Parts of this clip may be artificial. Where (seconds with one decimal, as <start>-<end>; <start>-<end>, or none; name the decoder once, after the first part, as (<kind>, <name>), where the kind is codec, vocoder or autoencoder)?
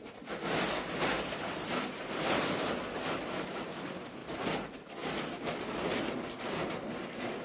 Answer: none